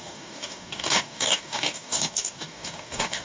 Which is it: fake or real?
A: fake